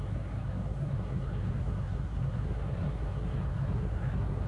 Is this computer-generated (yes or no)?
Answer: yes